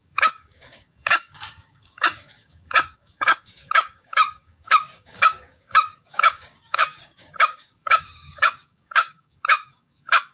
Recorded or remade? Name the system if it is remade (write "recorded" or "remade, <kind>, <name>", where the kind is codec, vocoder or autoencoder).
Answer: remade, codec, DAC